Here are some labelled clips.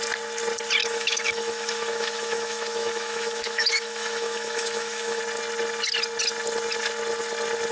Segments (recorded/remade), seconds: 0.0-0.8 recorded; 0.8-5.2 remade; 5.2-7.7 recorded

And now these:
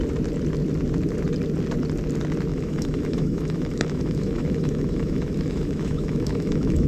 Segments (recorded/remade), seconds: 0.0-2.5 recorded; 2.5-6.9 remade